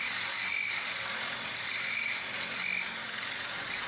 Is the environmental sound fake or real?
real